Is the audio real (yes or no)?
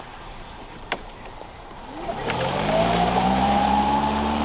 no